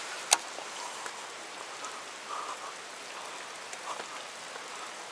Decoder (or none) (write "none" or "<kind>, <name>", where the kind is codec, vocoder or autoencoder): none